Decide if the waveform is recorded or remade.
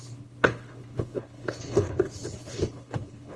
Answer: remade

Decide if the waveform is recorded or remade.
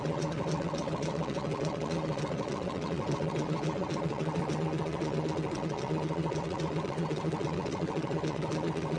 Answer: remade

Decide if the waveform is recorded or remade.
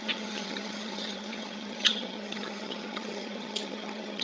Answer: remade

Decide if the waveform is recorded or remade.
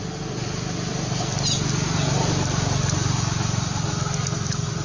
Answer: recorded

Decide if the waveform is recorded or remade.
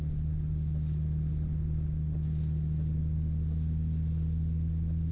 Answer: recorded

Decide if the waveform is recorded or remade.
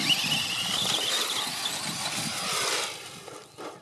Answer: recorded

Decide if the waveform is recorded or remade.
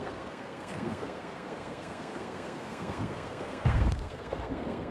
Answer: remade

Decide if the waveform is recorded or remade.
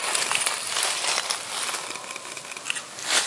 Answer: recorded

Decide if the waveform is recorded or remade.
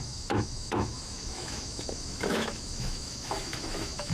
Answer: remade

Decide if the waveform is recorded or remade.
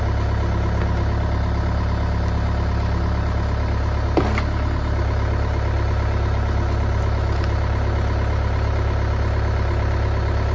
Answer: recorded